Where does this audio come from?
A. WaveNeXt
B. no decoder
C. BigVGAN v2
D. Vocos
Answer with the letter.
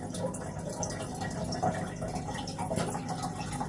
B